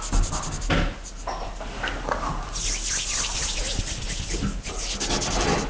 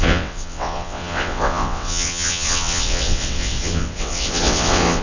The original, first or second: first